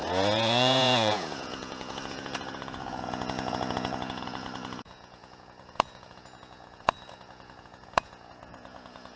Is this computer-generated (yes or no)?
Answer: yes